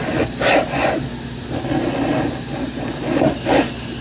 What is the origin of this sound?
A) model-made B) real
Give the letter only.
B